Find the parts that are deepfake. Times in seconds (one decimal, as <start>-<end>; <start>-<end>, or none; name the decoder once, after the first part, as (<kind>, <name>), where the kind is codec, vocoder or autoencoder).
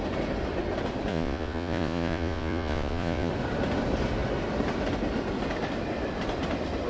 1.1-3.3 (vocoder, Vocos)